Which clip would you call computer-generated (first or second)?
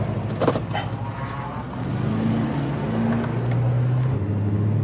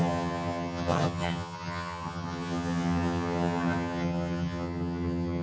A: second